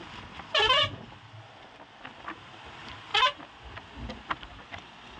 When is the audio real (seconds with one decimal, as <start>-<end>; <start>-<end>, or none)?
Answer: 0.0-5.2